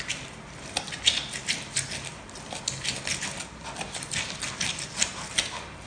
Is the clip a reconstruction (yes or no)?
no